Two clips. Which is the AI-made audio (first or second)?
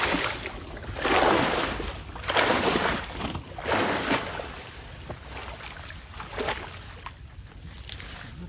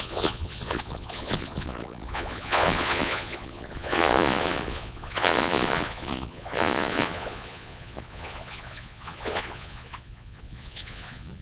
second